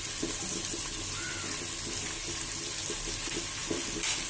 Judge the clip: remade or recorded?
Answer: recorded